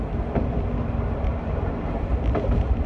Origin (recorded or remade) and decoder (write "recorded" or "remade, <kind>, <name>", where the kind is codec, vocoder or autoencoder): recorded